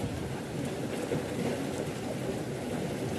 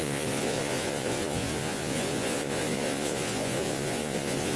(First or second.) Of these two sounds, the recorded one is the first